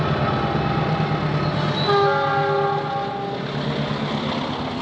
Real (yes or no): yes